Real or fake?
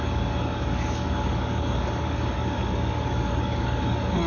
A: fake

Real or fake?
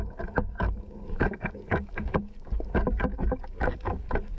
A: fake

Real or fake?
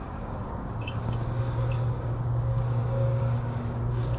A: fake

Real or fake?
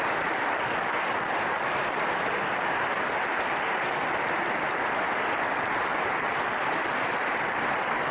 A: real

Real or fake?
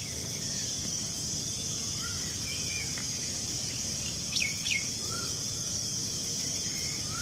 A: fake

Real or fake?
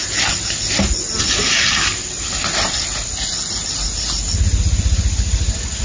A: real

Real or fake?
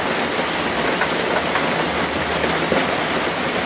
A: real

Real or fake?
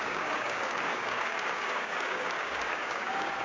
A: fake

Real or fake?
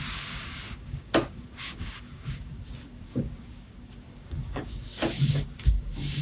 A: fake